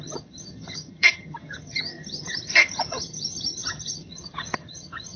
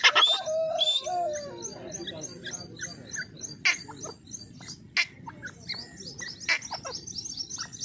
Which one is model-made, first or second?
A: first